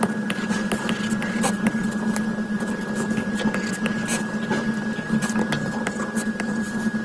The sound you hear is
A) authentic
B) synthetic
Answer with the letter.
A